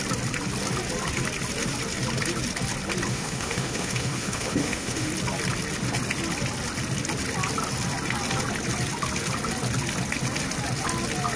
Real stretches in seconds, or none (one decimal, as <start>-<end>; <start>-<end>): 0.0-3.1; 5.1-11.4